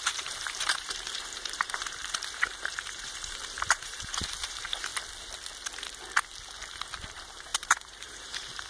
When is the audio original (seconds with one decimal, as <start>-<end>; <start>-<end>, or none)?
4.9-7.1